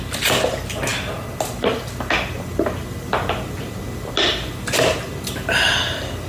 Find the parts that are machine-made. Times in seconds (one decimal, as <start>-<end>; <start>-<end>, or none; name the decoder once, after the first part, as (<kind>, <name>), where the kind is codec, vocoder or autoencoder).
none